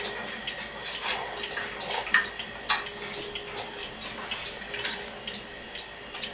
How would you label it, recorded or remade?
recorded